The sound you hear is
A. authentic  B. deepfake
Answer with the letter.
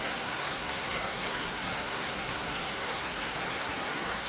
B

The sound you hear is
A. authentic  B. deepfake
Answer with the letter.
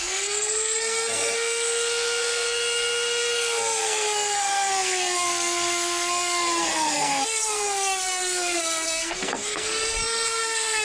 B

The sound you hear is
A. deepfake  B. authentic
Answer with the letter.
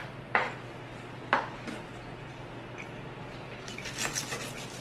B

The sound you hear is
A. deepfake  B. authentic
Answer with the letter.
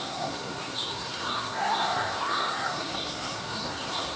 A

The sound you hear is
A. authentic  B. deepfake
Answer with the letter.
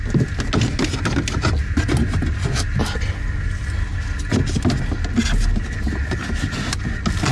A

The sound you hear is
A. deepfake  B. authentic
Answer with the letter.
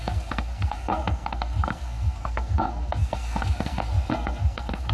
A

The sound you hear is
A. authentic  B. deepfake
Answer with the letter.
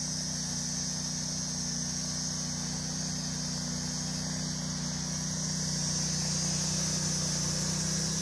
A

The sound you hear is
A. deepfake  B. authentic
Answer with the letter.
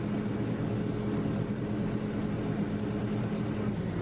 B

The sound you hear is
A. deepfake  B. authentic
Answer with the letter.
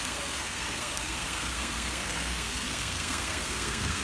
A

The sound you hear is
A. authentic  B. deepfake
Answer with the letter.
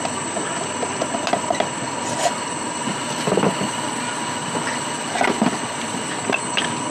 A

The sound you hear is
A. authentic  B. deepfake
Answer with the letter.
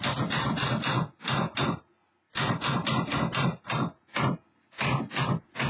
A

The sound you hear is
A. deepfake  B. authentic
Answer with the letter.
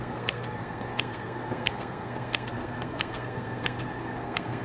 A